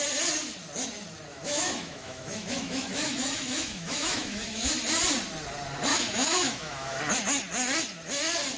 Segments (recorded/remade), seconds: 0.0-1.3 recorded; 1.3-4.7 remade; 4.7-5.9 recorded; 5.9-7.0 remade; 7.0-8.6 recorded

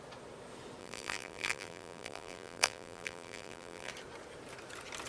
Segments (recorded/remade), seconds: 0.0-0.8 recorded; 0.8-3.9 remade; 3.9-5.1 recorded

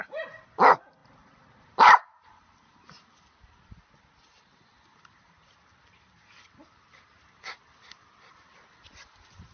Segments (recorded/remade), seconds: 0.0-1.0 recorded; 1.0-3.7 remade; 3.7-9.5 recorded